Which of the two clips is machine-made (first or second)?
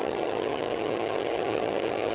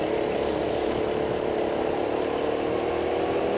first